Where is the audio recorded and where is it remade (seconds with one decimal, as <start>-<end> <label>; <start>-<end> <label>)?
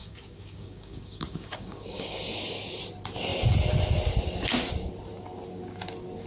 0.0-2.8 remade; 2.8-6.3 recorded